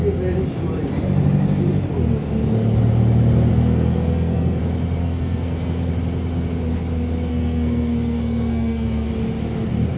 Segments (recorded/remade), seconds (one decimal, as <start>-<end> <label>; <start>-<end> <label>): 0.0-3.5 recorded; 3.5-4.6 remade; 4.6-5.0 recorded; 5.0-5.9 remade; 5.9-7.3 recorded; 7.3-9.1 remade; 9.1-10.0 recorded